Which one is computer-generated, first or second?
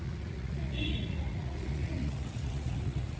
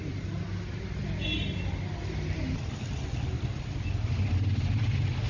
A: first